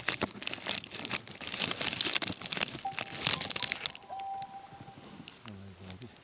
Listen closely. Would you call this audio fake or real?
real